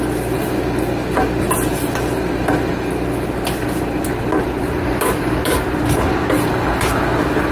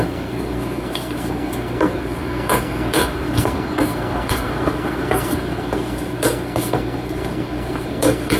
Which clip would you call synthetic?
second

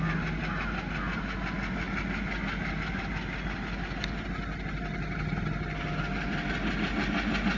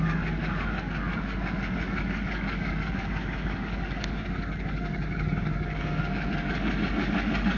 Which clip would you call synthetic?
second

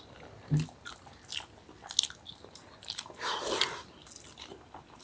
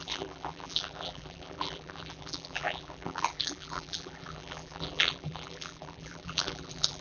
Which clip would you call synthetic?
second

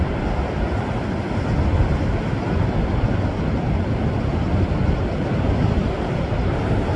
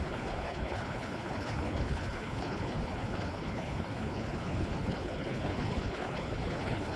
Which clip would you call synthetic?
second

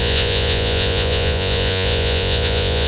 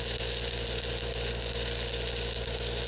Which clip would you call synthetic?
first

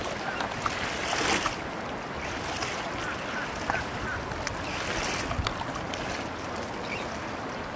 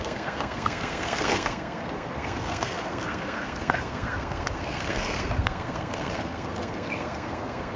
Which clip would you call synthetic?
second